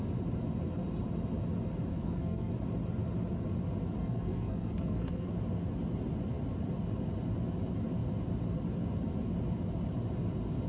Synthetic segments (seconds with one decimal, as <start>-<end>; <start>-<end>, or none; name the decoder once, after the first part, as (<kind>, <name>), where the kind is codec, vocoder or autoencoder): 1.9-2.5 (codec, SNAC); 4.0-5.3